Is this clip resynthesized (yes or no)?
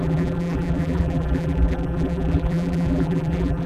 yes